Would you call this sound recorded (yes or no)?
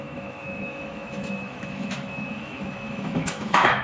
no